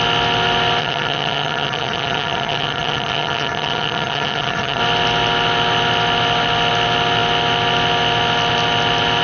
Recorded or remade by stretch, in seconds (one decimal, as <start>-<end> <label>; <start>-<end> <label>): 0.0-0.8 recorded; 0.8-4.8 remade; 4.8-9.2 recorded